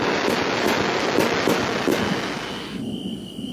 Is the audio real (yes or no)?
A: yes